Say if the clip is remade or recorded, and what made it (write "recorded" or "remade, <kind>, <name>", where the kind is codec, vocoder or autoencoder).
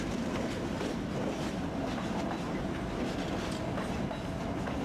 recorded